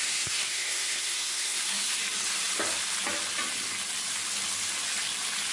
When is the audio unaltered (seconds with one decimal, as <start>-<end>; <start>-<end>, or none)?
2.0-5.5